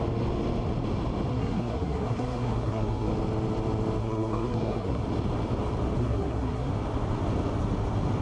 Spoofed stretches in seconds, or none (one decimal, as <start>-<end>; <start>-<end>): 1.3-3.1; 4.0-5.0; 6.0-6.7